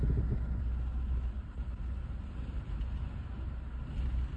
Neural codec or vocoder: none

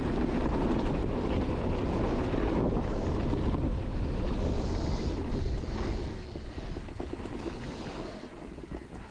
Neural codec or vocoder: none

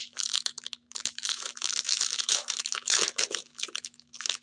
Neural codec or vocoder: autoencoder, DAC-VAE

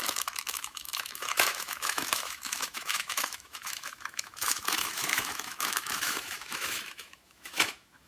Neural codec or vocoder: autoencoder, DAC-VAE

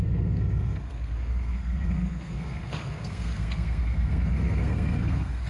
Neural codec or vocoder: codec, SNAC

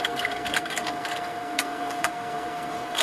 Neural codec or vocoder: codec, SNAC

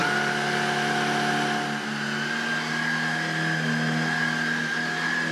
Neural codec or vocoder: none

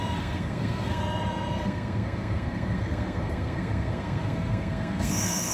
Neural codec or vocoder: codec, SNAC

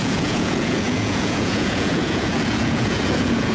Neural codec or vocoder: vocoder, Vocos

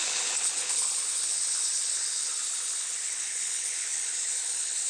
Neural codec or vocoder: codec, HILCodec